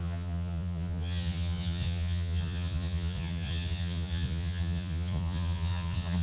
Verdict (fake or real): fake